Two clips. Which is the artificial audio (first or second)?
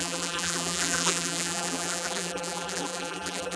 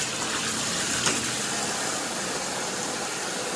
first